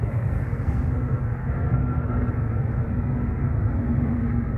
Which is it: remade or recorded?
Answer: remade